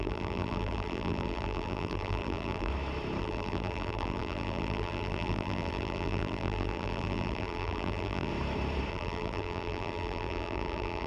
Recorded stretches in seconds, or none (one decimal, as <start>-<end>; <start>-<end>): 2.7-3.2; 8.3-8.9